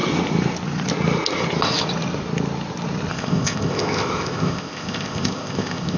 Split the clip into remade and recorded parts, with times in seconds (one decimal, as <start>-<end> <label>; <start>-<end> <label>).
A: 0.0-3.1 recorded; 3.1-6.0 remade